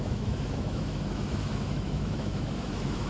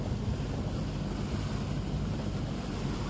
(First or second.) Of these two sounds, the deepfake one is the first